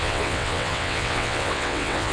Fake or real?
fake